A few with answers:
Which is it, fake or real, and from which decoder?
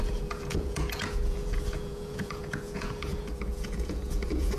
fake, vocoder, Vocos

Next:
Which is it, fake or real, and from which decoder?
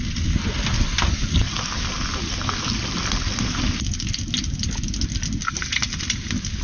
real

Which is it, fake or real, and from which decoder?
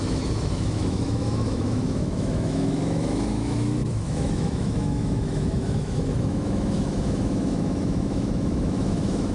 fake, autoencoder, DAC-VAE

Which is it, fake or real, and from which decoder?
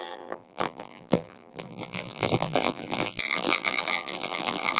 fake, vocoder, BigVGAN v2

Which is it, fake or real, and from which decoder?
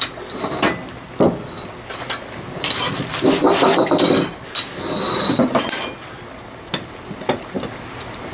real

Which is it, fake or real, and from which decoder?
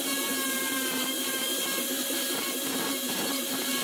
fake, vocoder, BigVGAN v2